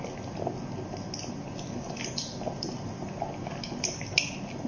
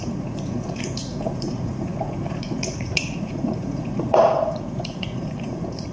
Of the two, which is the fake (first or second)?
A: second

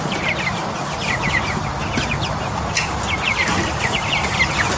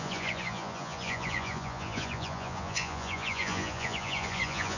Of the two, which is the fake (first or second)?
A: second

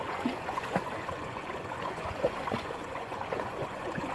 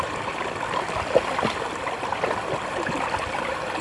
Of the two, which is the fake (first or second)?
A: first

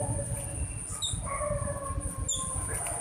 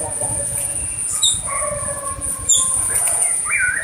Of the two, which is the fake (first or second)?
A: second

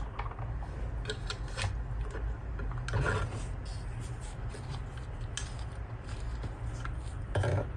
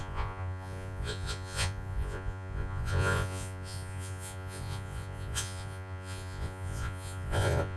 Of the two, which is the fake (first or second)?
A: second